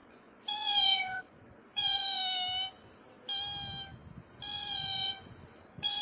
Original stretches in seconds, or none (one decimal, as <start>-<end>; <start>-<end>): 2.2-4.3